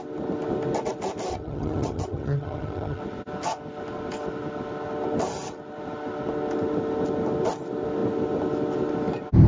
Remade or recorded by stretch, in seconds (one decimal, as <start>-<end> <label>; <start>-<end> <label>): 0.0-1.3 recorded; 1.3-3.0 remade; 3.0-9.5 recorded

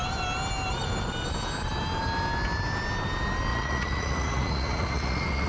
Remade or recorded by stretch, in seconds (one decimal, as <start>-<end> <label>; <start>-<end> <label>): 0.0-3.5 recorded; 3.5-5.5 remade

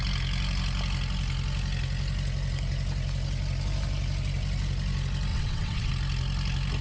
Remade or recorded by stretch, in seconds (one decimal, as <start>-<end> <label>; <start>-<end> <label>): 0.0-5.3 recorded; 5.3-5.9 remade; 5.9-6.8 recorded

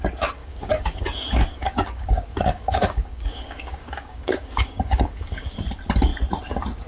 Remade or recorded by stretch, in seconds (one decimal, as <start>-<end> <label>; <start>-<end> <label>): 0.0-0.4 recorded; 0.4-1.0 remade; 1.0-1.5 recorded; 1.5-5.6 remade; 5.6-6.9 recorded